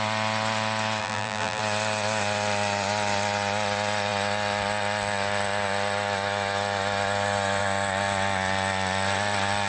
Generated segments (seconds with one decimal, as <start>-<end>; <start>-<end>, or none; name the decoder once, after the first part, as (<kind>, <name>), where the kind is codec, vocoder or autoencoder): 1.0-1.6 (vocoder, BigVGAN v2)